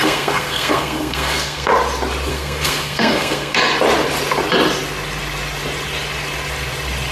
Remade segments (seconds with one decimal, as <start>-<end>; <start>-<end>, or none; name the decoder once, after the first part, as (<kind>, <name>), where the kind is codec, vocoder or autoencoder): 0.0-1.7 (codec, SNAC); 2.3-3.7